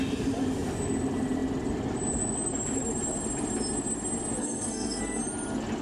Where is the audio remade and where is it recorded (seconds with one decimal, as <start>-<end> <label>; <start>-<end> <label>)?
0.0-4.4 recorded; 4.4-5.2 remade; 5.2-5.8 recorded

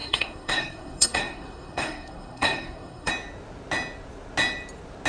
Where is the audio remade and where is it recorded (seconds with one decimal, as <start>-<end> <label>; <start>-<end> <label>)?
0.0-3.1 remade; 3.1-5.1 recorded

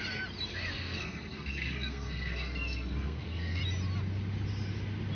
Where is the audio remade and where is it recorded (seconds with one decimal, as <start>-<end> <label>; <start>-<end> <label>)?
0.0-0.5 recorded; 0.5-3.6 remade; 3.6-5.2 recorded

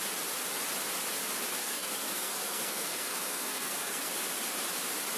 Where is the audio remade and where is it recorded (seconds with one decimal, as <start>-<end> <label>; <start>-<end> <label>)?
0.0-1.6 recorded; 1.6-4.1 remade; 4.1-5.2 recorded

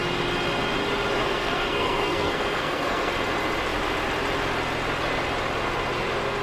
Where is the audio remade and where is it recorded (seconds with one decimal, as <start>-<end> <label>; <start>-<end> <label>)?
0.0-1.2 recorded; 1.2-3.1 remade; 3.1-6.4 recorded